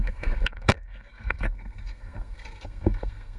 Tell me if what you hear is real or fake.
fake